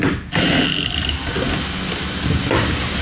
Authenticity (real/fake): real